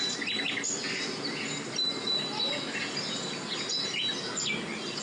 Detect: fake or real real